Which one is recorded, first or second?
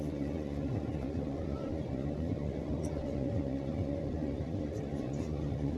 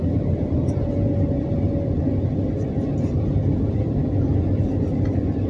second